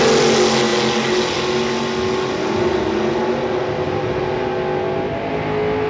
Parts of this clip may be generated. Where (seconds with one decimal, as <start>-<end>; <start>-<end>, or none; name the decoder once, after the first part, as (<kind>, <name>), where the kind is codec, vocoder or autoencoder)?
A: none